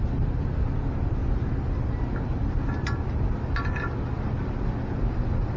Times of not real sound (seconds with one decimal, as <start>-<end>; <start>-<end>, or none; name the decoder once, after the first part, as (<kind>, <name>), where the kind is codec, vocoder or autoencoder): none